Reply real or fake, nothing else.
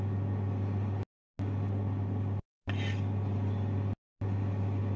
real